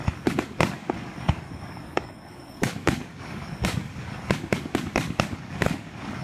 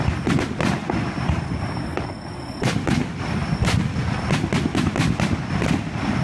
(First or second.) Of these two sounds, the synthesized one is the first